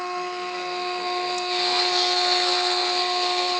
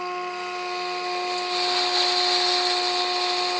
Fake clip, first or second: first